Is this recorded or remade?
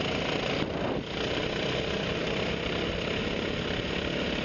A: recorded